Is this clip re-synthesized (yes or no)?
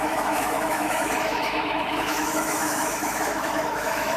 yes